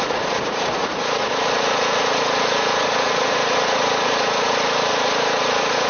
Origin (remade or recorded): remade